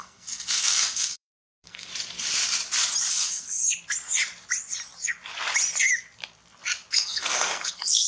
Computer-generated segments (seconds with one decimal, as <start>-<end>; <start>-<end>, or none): 0.0-1.9; 3.1-3.6; 6.9-8.1